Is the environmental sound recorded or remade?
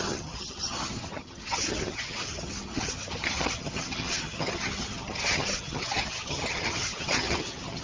remade